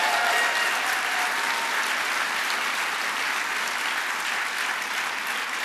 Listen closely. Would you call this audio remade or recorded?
recorded